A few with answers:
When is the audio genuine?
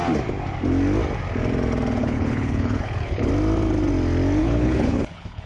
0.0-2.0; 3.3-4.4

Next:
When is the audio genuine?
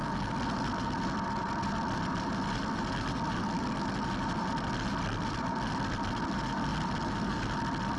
0.0-8.0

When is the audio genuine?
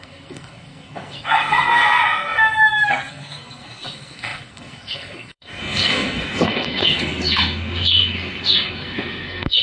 none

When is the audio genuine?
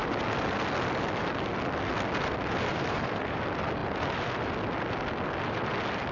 0.0-2.7; 3.4-6.1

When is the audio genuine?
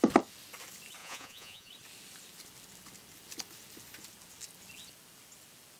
0.0-1.0; 1.7-5.8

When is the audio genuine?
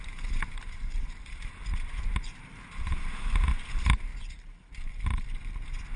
4.1-6.0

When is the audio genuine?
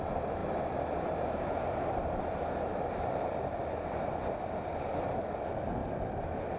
0.0-6.6